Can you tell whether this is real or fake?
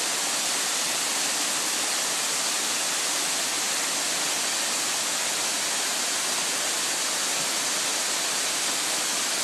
real